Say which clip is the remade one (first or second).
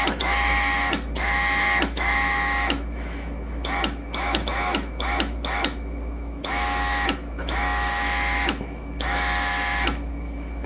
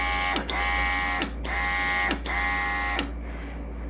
first